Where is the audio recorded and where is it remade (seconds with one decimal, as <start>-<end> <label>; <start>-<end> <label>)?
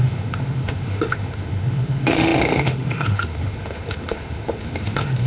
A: 0.0-5.3 remade